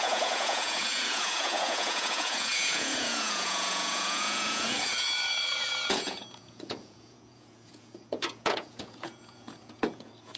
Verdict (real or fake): fake